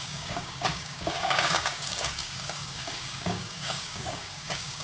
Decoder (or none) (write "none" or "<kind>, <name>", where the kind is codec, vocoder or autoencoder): codec, DAC